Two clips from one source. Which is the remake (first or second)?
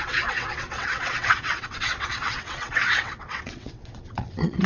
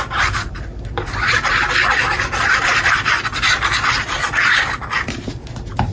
first